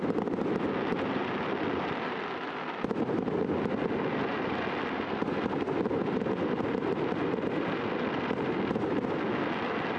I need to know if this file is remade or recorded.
recorded